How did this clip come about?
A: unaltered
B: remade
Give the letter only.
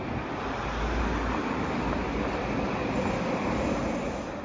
A